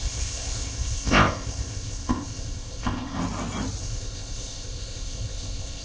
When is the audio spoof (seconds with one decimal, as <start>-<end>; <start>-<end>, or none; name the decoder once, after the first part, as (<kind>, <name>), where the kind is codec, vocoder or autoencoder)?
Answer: 0.0-3.2 (codec, ZipCodec); 3.8-5.8